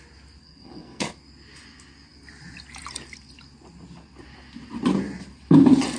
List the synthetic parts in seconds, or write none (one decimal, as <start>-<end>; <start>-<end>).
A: 0.4-1.1

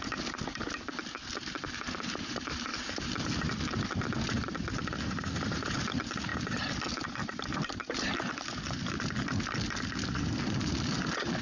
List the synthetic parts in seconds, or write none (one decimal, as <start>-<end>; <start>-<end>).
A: none

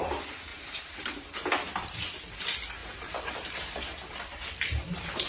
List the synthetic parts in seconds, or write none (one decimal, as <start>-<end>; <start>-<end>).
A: 0.5-1.5; 2.8-5.3

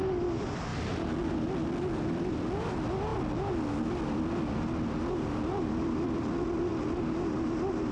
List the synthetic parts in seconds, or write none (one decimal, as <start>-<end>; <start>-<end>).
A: none

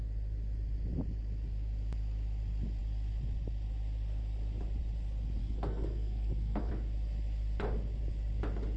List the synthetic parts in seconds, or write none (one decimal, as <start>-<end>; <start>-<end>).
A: 5.4-6.7

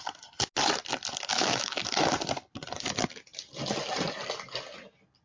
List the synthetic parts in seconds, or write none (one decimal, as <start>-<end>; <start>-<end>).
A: 1.3-1.8

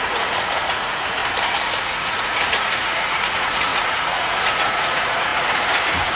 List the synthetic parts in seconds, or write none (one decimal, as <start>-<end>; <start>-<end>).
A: 0.0-1.2; 1.8-6.2